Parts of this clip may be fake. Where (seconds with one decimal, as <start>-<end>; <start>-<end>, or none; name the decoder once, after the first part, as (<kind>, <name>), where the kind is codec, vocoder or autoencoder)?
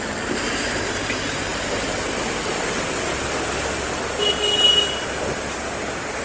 none